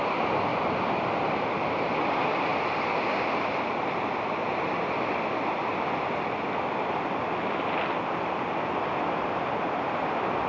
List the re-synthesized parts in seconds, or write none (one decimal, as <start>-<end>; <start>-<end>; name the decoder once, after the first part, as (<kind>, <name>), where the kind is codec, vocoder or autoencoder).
0.0-10.5 (vocoder, BigVGAN v2)